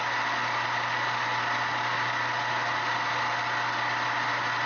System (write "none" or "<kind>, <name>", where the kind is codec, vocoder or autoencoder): none